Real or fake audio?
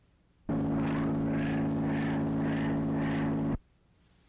real